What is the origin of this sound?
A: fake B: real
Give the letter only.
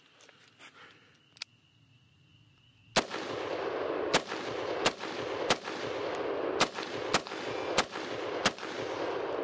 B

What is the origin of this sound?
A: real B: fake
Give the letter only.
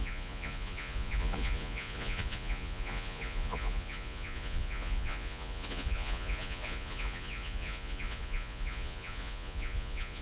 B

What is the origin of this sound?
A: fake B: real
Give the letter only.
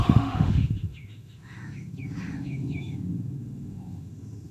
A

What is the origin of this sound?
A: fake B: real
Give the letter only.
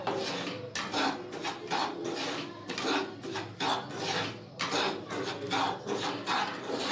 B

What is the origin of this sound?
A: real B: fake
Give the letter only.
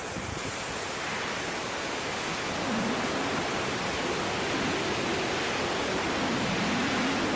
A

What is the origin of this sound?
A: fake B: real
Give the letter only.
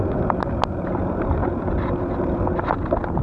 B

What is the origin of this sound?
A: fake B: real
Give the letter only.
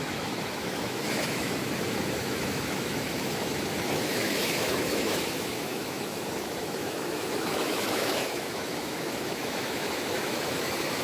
A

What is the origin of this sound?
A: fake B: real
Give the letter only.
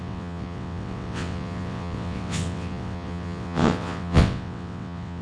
A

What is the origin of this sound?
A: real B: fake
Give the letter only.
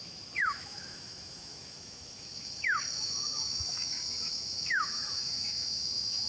B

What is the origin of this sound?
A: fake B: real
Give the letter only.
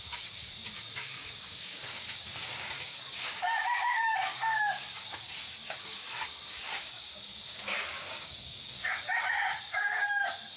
A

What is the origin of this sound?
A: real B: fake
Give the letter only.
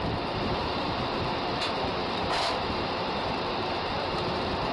B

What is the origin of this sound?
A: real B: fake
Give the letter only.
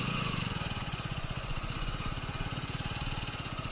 B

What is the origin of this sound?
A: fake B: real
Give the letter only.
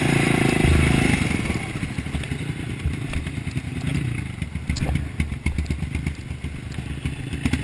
B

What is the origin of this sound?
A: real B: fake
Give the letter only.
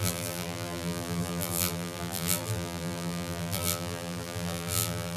B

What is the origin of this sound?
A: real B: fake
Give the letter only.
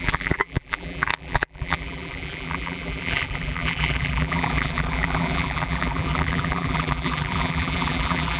B